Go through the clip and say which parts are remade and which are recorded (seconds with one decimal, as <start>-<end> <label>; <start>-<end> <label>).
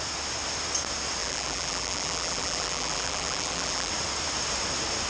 0.0-1.2 recorded; 1.2-3.9 remade; 3.9-5.1 recorded